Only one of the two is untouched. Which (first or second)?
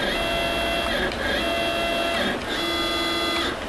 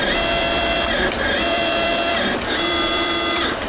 first